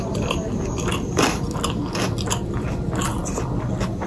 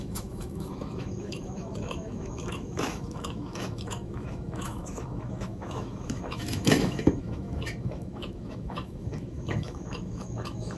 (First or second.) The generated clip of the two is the second